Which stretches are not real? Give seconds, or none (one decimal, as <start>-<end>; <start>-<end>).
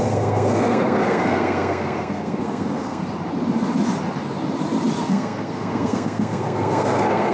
0.0-3.0; 5.0-7.3